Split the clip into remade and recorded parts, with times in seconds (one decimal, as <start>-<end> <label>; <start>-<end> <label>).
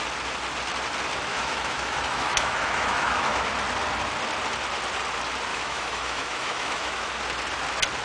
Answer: 0.0-1.3 recorded; 1.3-3.4 remade; 3.4-5.5 recorded; 5.5-7.1 remade; 7.1-8.0 recorded